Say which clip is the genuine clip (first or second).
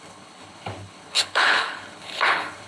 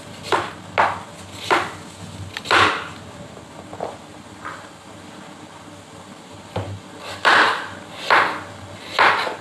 second